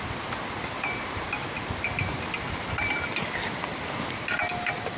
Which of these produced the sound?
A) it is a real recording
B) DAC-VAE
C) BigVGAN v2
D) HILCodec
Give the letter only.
C